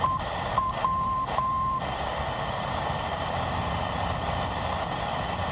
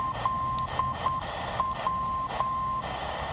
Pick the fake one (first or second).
first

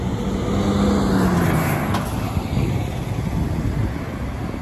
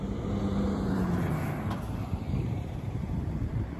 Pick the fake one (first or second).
second